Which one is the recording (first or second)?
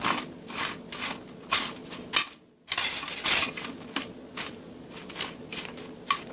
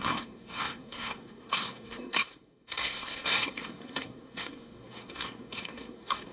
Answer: first